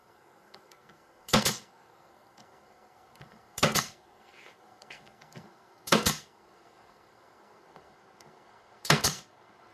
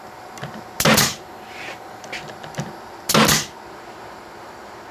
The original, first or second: second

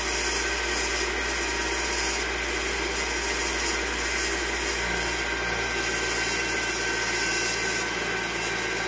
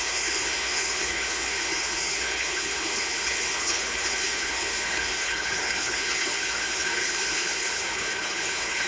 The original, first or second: first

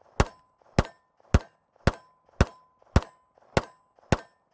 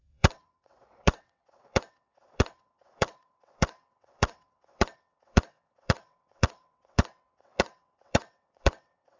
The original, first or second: first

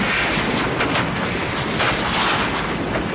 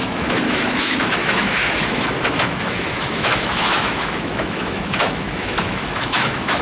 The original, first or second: first